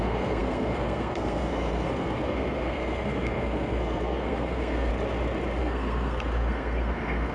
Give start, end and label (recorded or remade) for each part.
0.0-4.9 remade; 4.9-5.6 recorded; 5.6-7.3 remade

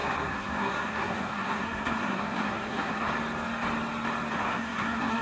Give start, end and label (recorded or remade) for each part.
0.0-3.1 remade; 3.1-4.4 recorded; 4.4-5.2 remade

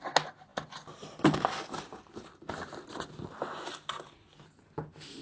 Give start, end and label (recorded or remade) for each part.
0.0-5.2 recorded

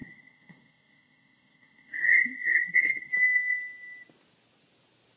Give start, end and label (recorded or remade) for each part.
0.0-3.1 remade; 3.1-5.2 recorded

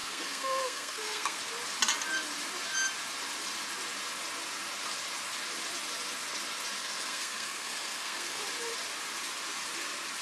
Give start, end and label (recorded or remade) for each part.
0.0-1.4 remade; 1.4-6.8 recorded; 6.8-8.4 remade; 8.4-10.2 recorded

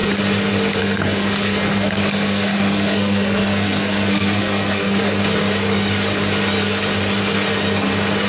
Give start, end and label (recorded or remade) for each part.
0.0-0.8 recorded; 0.8-5.2 remade; 5.2-8.3 recorded